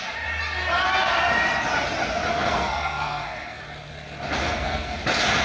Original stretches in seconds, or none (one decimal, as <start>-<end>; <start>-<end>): 0.0-2.3; 3.6-4.4; 5.0-5.4